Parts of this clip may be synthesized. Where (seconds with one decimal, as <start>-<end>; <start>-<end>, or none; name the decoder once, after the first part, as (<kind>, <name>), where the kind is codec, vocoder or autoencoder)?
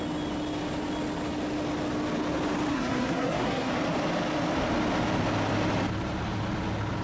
2.7-3.7 (codec, SNAC)